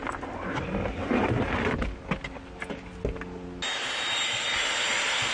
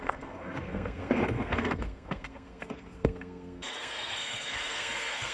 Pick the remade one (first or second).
second